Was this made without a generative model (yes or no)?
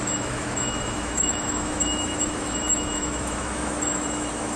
no